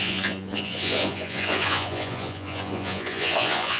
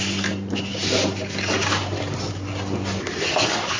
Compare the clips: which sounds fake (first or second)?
first